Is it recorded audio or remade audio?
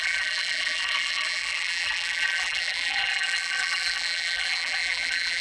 remade